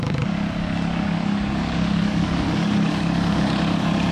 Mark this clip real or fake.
fake